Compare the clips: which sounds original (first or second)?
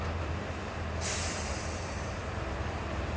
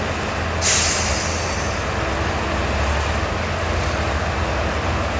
second